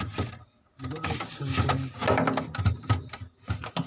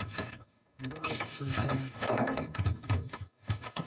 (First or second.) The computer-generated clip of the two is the second